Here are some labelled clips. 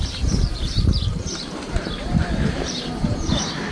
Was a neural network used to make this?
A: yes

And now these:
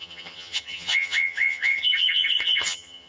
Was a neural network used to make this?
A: yes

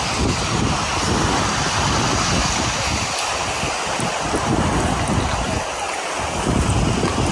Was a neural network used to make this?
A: no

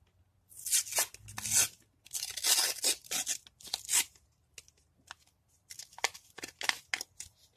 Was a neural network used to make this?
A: no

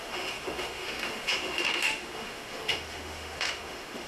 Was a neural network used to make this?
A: yes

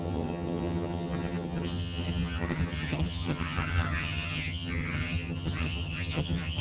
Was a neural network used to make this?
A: yes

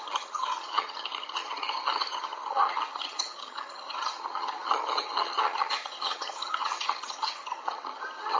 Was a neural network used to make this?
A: yes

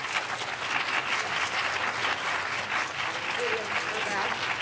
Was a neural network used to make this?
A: no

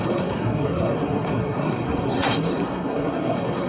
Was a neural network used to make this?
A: yes